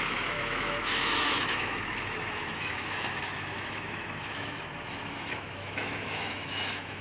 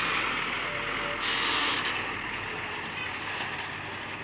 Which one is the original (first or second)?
second